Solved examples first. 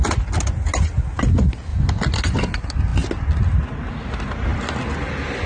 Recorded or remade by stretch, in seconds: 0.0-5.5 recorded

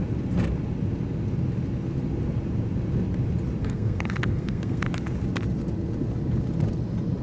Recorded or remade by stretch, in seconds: 0.0-3.6 recorded; 3.6-4.8 remade; 4.8-7.2 recorded

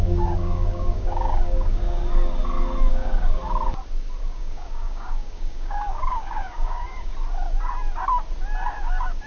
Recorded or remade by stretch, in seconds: 0.0-2.0 remade; 2.0-2.9 recorded; 2.9-3.4 remade; 3.4-4.2 recorded; 4.2-7.1 remade; 7.1-8.8 recorded; 8.8-9.3 remade